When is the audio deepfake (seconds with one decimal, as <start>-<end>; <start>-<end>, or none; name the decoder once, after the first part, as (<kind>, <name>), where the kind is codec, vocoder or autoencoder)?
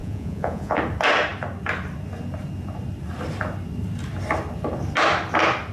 0.0-0.8 (vocoder, Vocos)